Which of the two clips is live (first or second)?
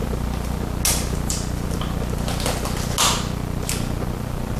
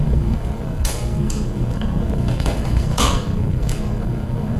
first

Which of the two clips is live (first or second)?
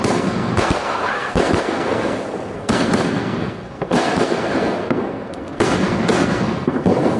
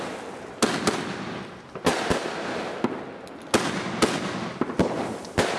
second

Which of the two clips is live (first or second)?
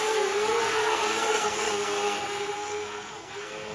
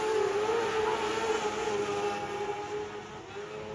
second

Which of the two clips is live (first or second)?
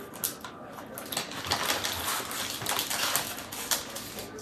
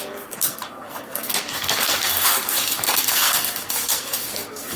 first